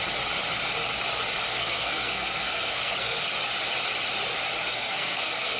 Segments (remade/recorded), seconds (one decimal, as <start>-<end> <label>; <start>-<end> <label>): 0.0-1.5 recorded; 1.5-3.2 remade; 3.2-4.6 recorded; 4.6-5.6 remade